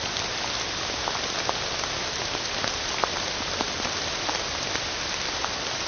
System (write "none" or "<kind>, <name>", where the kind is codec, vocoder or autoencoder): none